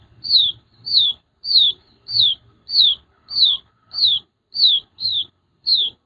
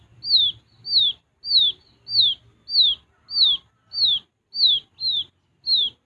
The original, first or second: second